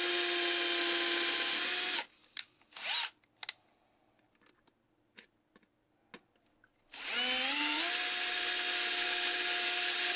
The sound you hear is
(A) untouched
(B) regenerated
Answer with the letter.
A